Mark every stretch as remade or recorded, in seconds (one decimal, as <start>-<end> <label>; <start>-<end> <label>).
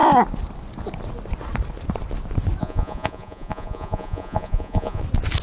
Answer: 0.0-2.6 recorded; 2.6-5.0 remade; 5.0-5.4 recorded